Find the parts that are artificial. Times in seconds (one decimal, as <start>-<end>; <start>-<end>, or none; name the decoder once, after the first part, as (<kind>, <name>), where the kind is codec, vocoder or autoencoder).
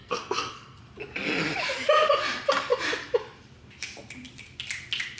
0.0-0.8 (codec, SNAC)